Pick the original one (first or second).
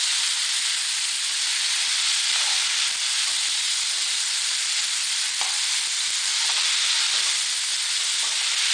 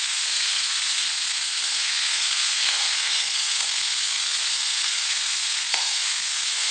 first